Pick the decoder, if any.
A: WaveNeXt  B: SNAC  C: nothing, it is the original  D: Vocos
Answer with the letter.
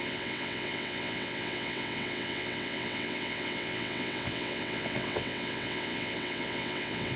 A